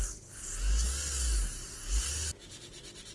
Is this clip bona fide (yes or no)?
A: yes